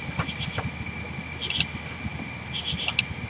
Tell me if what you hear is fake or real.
real